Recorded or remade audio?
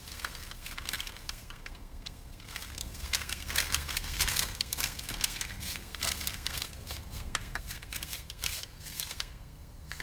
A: remade